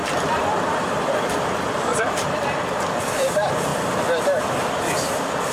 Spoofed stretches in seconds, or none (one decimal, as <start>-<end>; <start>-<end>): 0.0-3.7; 4.8-5.5